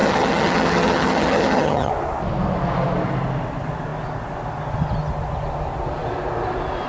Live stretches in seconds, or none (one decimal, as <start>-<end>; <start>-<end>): 1.9-6.9

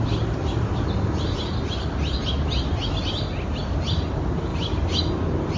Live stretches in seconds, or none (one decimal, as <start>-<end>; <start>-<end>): 0.0-5.6

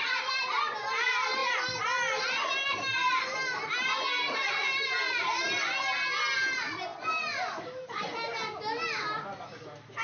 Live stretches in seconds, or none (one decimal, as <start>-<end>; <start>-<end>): 0.0-10.0